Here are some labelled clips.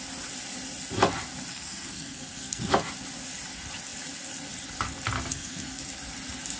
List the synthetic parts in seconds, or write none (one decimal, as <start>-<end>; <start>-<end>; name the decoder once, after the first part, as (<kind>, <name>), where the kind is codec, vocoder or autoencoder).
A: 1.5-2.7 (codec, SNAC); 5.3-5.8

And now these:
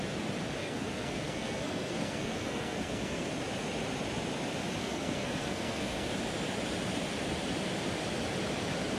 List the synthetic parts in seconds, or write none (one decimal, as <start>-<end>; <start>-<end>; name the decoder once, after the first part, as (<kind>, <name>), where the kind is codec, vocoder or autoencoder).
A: 0.6-3.3 (codec, SNAC); 4.8-6.1

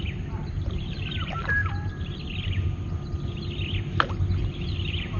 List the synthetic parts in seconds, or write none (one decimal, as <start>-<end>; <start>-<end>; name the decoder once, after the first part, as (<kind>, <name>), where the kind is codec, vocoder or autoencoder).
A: none

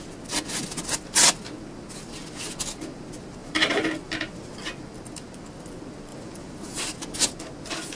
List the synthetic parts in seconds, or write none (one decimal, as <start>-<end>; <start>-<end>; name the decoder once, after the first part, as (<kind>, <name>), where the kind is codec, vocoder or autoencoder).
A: 3.4-4.5 (vocoder, BigVGAN v2); 6.1-6.8

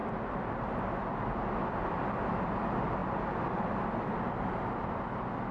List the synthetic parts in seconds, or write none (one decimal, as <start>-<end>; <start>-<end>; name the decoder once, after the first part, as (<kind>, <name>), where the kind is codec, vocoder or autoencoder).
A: none

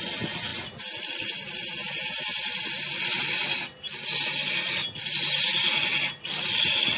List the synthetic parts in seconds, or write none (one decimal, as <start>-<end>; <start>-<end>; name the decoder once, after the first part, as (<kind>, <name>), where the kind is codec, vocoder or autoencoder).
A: 2.1-3.2 (vocoder, BigVGAN v2)

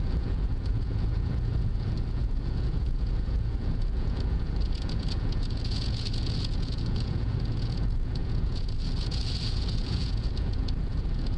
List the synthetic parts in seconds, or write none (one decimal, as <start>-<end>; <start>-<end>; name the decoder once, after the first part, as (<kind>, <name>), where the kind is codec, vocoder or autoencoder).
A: 0.0-11.4 (vocoder, Vocos)